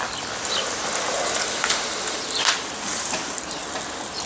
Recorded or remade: recorded